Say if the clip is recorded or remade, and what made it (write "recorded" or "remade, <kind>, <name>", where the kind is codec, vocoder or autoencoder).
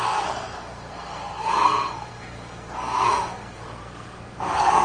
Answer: remade, codec, SNAC